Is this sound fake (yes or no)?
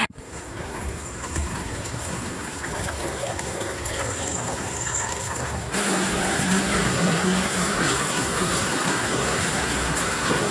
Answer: yes